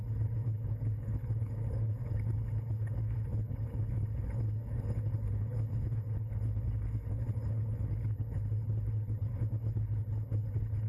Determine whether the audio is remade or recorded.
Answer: remade